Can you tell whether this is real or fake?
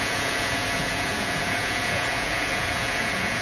fake